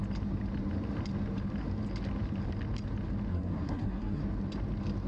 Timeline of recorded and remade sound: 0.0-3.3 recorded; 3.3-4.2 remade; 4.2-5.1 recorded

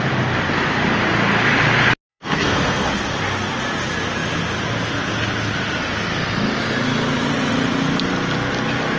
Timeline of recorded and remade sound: 0.0-2.1 recorded; 2.1-2.9 remade; 2.9-9.0 recorded

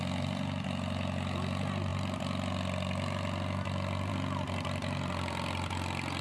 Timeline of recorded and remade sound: 0.0-6.2 recorded